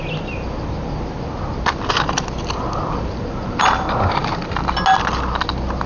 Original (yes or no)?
yes